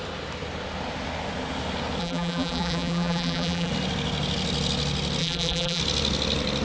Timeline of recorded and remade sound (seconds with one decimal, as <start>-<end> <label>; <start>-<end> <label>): 0.0-2.0 recorded; 2.0-3.7 remade; 3.7-5.2 recorded; 5.2-5.8 remade; 5.8-6.6 recorded